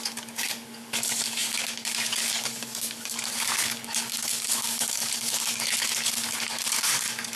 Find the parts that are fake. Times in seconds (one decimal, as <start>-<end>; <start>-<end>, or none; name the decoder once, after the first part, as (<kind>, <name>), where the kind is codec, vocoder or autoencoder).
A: 0.0-7.4 (codec, DAC)